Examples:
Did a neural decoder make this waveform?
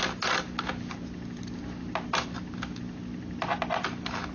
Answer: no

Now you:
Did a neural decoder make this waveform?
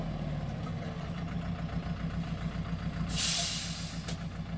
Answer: no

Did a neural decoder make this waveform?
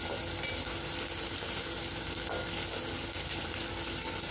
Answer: no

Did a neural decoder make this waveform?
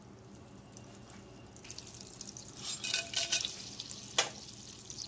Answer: no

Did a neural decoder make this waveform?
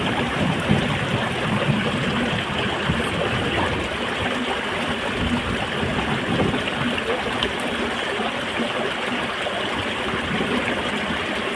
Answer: no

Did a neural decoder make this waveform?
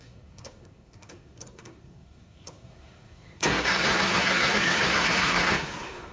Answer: yes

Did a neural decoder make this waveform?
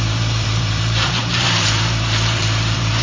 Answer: yes